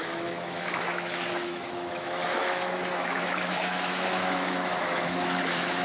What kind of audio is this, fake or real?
fake